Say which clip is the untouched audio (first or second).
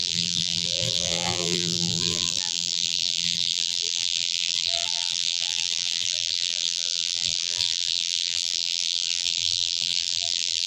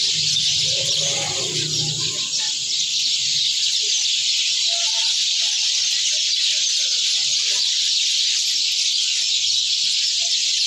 second